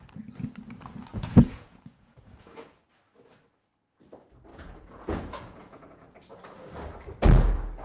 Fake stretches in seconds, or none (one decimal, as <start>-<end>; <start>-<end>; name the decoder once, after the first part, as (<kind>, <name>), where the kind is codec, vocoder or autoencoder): 1.1-2.8 (vocoder, Vocos); 4.5-6.2